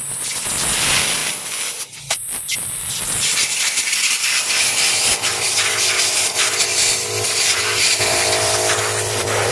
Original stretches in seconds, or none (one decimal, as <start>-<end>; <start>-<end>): 1.2-2.0